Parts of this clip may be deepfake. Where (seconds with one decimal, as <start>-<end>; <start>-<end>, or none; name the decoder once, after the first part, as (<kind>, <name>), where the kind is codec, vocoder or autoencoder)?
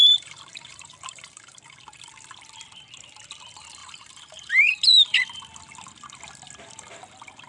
0.0-2.1 (vocoder, BigVGAN v2); 3.8-5.4